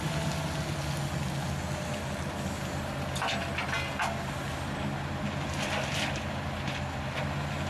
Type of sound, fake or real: real